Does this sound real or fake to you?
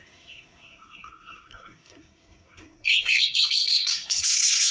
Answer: fake